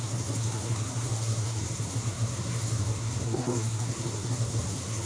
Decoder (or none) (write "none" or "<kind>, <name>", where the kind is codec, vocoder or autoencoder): codec, SNAC